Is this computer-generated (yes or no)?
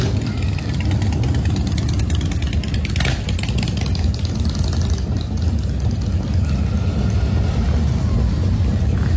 no